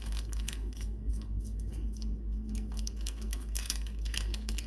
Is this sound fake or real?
fake